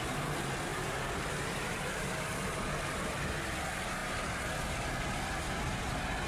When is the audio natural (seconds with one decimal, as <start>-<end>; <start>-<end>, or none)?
0.0-0.7; 2.4-6.3